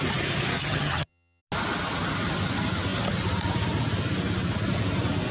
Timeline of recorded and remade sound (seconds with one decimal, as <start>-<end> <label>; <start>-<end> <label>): 0.0-0.6 recorded; 0.6-1.4 remade; 1.4-5.3 recorded